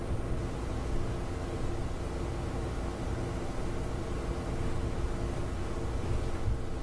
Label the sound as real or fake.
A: real